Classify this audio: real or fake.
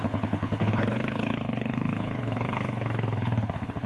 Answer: fake